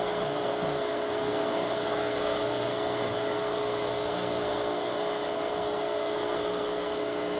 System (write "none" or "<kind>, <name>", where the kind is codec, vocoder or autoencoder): codec, SNAC